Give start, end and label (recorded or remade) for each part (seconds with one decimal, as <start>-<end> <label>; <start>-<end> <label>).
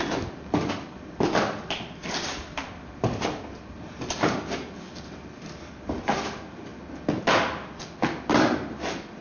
0.0-6.7 remade; 6.7-8.5 recorded; 8.5-9.2 remade